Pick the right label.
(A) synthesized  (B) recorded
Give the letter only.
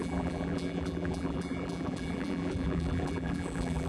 A